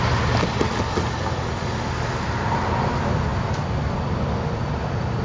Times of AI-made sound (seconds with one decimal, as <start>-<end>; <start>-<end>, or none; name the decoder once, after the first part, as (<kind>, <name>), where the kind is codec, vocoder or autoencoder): none